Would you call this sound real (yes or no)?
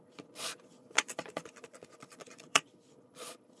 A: no